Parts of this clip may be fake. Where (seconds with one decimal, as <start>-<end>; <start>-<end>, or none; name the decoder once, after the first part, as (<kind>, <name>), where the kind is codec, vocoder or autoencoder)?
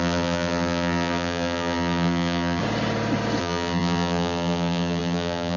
0.0-2.6 (vocoder, BigVGAN v2); 3.4-5.6